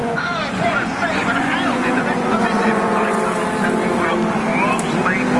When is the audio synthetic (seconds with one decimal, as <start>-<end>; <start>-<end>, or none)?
0.0-3.2